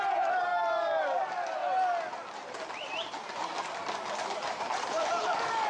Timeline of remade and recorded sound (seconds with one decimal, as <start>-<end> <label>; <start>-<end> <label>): 0.0-0.5 remade; 0.5-1.2 recorded; 1.2-1.6 remade; 1.6-2.3 recorded; 2.3-5.7 remade